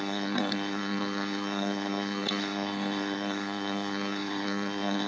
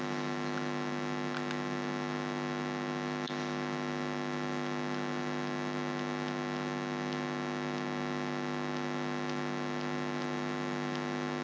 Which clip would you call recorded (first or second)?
second